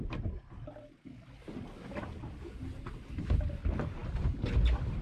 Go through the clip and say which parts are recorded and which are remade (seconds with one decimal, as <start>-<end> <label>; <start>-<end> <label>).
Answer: 0.0-5.0 recorded